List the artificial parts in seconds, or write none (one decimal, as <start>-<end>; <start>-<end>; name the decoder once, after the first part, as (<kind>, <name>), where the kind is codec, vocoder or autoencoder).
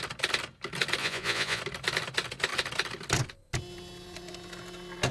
1.0-1.6 (vocoder, Vocos)